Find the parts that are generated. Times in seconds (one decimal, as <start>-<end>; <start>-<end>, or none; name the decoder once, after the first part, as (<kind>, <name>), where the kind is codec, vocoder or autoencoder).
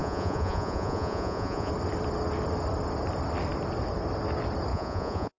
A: 0.0-1.7 (vocoder, Vocos); 4.7-5.4